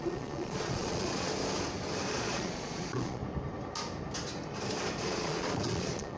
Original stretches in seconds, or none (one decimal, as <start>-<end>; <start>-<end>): 1.3-2.1; 3.2-5.0